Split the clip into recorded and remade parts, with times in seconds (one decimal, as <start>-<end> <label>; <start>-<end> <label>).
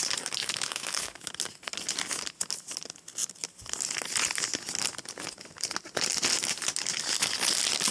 0.0-0.4 recorded; 0.4-1.3 remade; 1.3-7.9 recorded